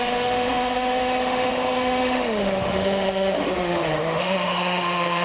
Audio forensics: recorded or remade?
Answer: remade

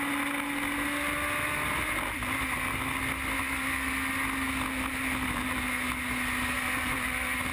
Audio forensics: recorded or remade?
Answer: recorded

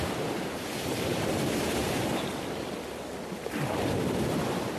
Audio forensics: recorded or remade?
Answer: recorded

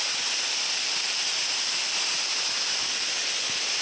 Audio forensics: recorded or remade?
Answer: recorded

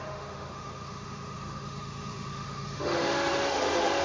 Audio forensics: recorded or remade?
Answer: remade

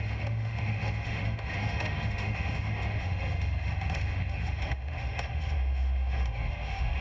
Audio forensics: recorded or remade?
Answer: remade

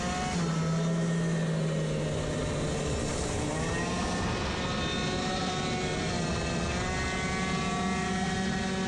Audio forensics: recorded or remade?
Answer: recorded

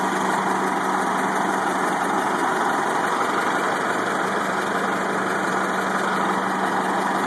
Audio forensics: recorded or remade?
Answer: recorded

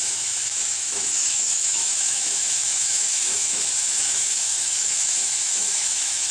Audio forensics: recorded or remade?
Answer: remade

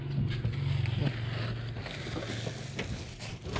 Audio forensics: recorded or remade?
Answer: recorded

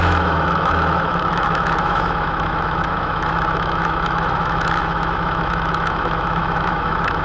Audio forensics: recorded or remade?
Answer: remade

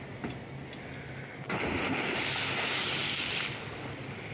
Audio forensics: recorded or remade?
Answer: recorded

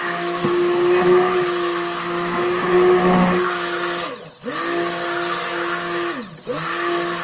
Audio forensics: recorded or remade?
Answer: recorded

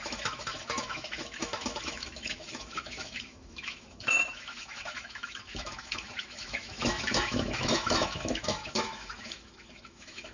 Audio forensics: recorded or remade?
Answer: remade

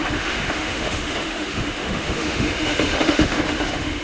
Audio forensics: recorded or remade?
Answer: remade